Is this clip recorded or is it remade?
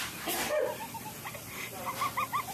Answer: remade